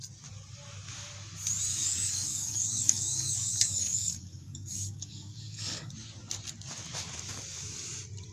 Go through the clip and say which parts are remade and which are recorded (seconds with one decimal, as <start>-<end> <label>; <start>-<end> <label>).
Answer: 0.0-1.7 recorded; 1.7-5.9 remade; 5.9-8.3 recorded